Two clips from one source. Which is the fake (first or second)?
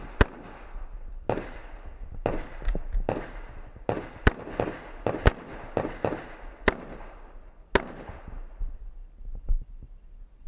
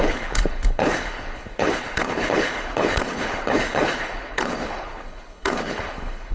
second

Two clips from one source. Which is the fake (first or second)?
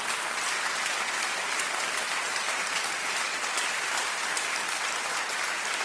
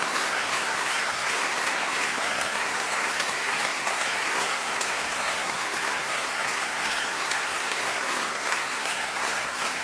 second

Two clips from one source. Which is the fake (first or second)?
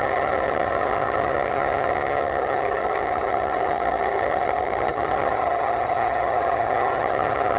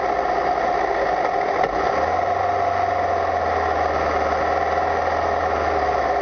first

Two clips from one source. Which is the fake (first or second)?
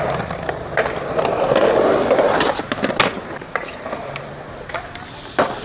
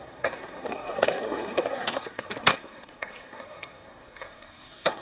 second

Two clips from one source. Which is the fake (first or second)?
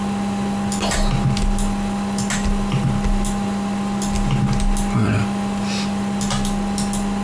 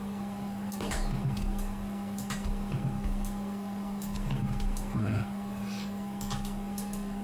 second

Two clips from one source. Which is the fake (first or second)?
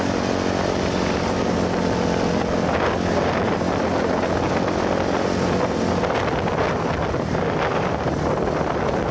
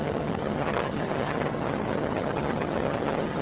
second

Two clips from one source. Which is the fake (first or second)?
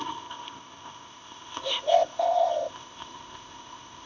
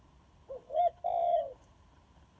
first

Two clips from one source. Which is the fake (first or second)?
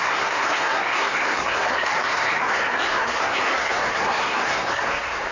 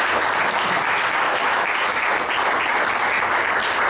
first